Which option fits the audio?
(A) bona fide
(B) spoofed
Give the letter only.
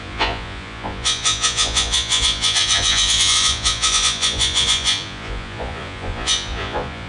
B